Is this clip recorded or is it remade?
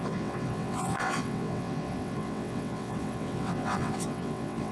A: remade